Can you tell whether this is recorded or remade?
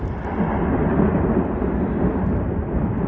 recorded